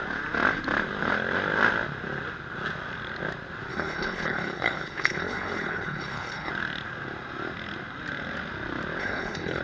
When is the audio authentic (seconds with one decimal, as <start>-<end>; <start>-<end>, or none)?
0.0-3.7; 6.5-9.0